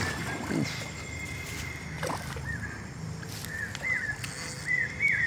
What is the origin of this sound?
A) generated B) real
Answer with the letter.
B